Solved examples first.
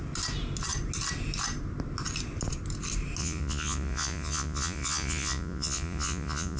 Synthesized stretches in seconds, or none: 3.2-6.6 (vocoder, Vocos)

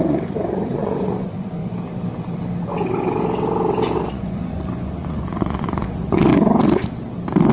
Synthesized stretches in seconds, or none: 0.0-1.6 (vocoder, Vocos); 4.1-6.3

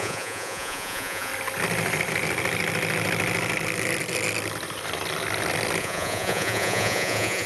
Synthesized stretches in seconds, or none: 0.0-1.3 (vocoder, Vocos); 5.8-7.5